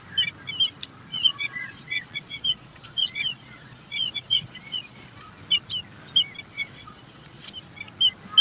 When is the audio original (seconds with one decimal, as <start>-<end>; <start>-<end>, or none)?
0.0-1.1; 5.3-6.5; 7.5-8.4